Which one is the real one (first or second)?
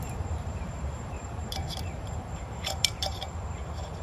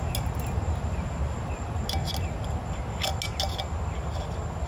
second